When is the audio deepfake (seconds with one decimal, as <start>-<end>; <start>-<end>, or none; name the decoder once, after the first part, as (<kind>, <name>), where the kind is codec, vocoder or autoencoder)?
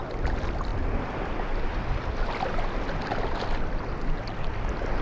none